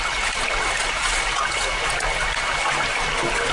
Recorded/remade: recorded